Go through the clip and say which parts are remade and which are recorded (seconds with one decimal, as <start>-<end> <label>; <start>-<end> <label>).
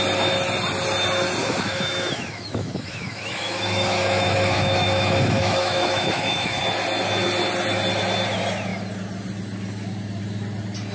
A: 0.0-1.4 recorded; 1.4-6.6 remade; 6.6-10.9 recorded